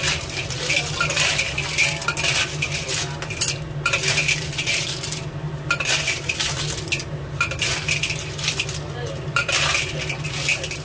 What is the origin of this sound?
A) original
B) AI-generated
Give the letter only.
A